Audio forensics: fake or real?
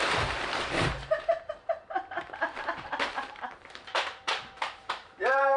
fake